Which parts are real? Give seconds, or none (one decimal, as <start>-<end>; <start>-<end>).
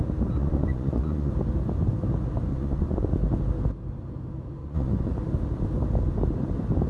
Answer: 0.0-0.4; 1.3-2.5; 3.1-4.6; 5.1-6.9